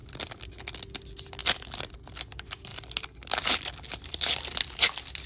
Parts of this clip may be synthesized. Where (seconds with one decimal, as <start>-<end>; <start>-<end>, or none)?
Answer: 0.0-0.5; 1.4-1.9